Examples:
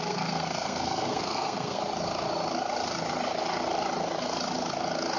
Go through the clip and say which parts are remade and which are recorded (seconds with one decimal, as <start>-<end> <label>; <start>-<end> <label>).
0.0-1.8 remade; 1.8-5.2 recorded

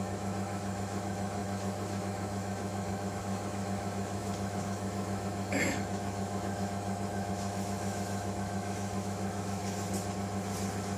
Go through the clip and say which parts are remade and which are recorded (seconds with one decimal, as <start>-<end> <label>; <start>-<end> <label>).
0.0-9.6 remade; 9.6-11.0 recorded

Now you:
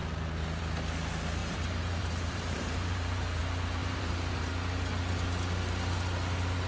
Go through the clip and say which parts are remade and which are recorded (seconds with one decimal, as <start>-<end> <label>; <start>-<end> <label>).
0.0-1.4 recorded; 1.4-3.4 remade; 3.4-3.8 recorded; 3.8-4.5 remade; 4.5-6.7 recorded

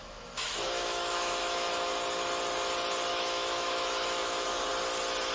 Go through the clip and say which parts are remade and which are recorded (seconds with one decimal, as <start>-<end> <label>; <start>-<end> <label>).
0.0-1.9 remade; 1.9-3.1 recorded; 3.1-4.7 remade; 4.7-5.3 recorded

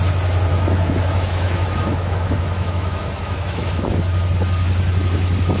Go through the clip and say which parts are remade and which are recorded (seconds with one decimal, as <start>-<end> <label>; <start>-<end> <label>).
0.0-0.5 recorded; 0.5-3.9 remade; 3.9-5.6 recorded